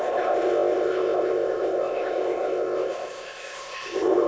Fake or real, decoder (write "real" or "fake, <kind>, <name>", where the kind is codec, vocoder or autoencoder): fake, codec, ZipCodec